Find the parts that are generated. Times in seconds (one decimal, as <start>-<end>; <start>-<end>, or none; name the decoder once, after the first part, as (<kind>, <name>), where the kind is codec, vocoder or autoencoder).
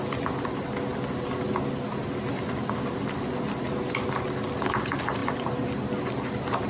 none